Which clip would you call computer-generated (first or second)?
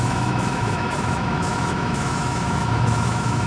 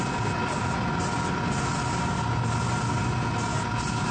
first